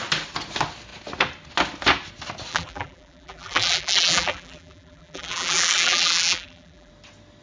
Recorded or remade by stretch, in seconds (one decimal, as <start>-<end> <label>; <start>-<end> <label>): 0.0-2.5 recorded; 2.5-6.9 remade; 6.9-7.4 recorded